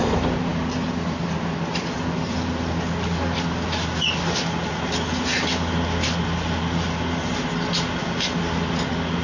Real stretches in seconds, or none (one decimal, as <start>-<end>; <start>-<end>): 0.0-9.2